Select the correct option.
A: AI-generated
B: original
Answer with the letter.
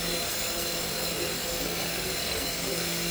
A